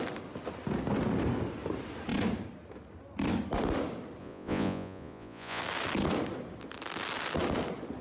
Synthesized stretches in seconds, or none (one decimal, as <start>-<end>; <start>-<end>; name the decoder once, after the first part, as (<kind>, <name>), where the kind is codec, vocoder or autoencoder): 4.2-5.6 (vocoder, Vocos)